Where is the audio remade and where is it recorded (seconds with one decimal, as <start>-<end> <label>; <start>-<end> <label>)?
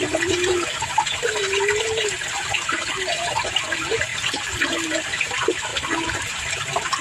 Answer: 0.0-7.0 remade